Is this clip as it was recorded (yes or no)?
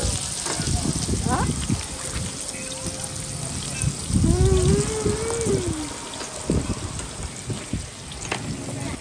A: yes